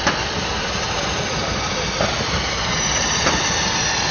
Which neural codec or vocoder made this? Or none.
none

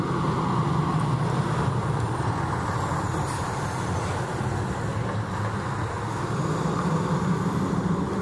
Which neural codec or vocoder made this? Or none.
none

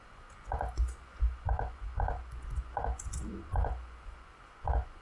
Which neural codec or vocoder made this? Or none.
vocoder, Vocos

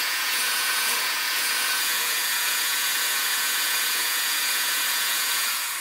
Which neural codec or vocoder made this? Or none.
vocoder, Vocos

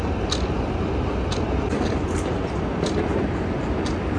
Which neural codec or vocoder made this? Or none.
none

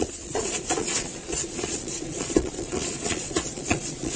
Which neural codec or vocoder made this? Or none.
vocoder, Vocos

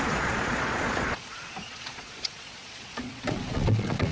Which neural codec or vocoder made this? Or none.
vocoder, Vocos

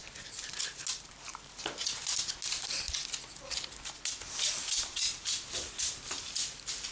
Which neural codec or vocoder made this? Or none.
none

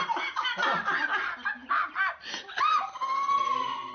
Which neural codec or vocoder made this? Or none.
none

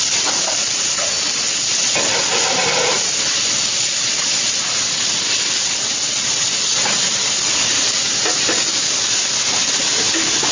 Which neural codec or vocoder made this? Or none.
none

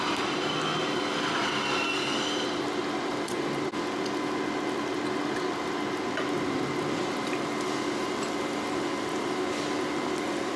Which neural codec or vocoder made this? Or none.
none